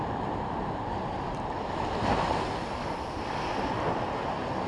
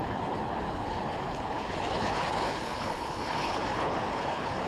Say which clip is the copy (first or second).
second